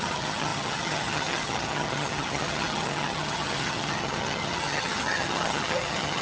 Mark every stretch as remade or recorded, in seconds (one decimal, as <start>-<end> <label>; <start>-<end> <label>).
0.0-6.2 remade